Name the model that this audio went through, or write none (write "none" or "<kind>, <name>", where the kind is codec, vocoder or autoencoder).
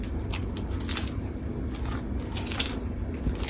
none